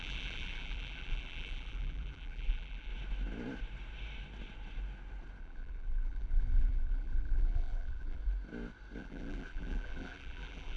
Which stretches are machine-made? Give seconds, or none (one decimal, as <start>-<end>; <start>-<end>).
0.0-2.9; 5.4-8.2; 9.0-10.8